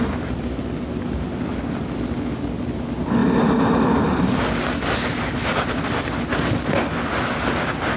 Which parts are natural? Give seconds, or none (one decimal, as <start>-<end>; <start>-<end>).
0.0-8.0